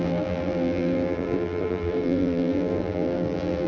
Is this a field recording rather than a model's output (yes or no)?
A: no